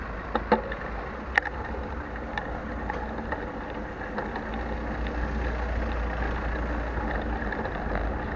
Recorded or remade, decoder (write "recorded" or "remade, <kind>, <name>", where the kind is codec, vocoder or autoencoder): recorded